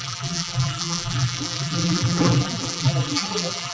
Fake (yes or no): yes